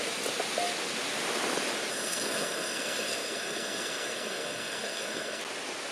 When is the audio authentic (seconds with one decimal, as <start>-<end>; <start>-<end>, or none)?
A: 0.0-1.9; 5.4-5.9